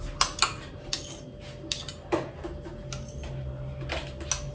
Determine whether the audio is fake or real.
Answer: real